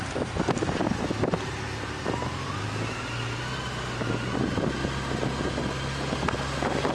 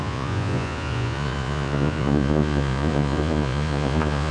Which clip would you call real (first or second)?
first